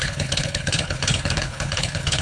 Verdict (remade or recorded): remade